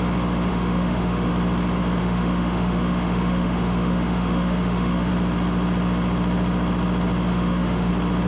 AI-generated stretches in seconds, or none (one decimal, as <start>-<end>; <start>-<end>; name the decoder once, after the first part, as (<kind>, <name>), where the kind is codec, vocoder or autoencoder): 0.5-1.3 (autoencoder, DAC-VAE); 2.0-5.1; 7.3-7.9

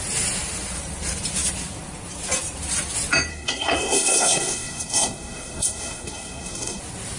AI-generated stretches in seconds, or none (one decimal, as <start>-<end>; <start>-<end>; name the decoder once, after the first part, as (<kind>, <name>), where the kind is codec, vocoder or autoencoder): 3.3-6.8 (codec, SNAC)

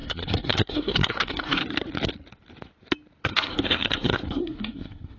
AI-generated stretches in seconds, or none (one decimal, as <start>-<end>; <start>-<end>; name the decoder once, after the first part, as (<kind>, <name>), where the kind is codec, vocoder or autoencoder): 0.0-1.6 (codec, SNAC); 3.2-5.2

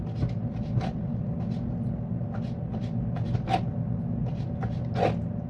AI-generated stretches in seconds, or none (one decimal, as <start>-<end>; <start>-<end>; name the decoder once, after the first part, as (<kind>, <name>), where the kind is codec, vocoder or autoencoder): none

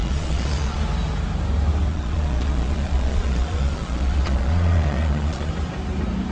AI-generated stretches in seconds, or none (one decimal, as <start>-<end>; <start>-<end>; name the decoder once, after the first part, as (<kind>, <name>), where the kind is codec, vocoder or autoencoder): 0.0-0.8 (vocoder, Vocos); 1.9-5.5

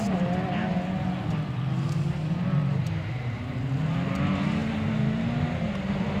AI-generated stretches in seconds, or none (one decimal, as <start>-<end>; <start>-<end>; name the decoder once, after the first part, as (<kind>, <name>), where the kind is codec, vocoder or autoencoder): none